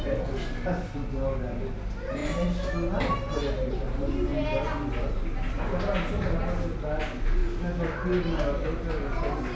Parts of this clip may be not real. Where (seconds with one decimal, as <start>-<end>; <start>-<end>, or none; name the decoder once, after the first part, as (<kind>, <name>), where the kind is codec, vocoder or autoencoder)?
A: none